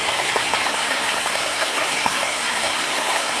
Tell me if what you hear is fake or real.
fake